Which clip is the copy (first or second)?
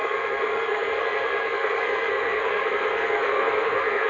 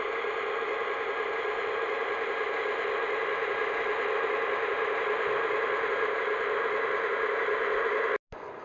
first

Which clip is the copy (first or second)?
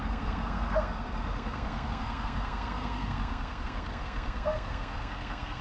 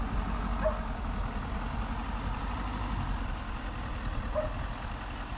first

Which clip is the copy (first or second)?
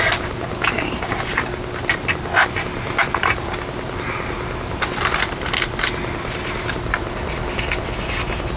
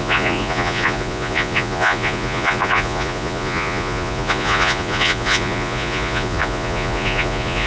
second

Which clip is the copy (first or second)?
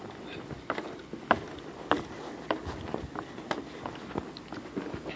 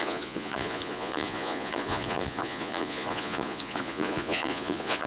second